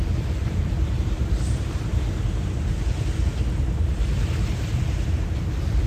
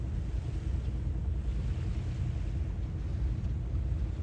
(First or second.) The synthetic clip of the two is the first